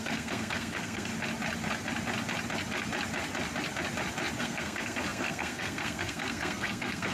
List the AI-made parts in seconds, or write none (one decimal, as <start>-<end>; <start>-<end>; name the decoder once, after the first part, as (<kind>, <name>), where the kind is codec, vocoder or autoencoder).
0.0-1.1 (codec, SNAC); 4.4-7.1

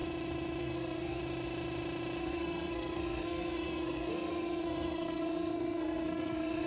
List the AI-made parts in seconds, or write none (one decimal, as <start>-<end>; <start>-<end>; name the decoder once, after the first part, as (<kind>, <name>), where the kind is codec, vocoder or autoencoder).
0.6-1.2 (codec, SNAC); 2.2-6.7

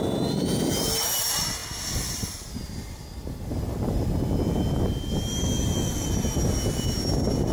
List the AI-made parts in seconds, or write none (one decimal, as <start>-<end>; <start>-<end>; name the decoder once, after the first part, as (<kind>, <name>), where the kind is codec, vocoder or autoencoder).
none

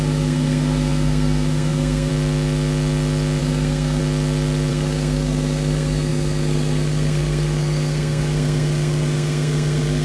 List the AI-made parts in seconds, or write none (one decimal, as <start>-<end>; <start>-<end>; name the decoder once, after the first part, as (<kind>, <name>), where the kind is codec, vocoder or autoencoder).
0.0-2.1 (codec, SNAC); 3.4-4.0; 4.7-10.0